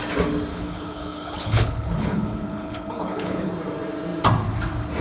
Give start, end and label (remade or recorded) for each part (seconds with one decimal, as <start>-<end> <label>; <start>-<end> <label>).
0.0-0.5 recorded; 0.5-3.5 remade; 3.5-5.0 recorded